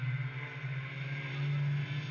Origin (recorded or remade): recorded